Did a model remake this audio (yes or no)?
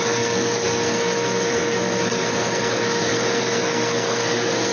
yes